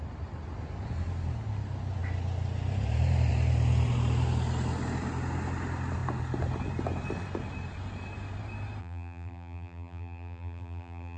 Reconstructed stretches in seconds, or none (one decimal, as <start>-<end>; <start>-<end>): 8.8-11.2